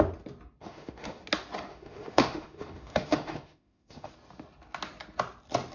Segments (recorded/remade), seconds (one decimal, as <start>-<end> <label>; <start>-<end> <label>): 0.0-0.6 recorded; 0.6-1.2 remade; 1.2-1.7 recorded; 1.7-4.1 remade; 4.1-5.7 recorded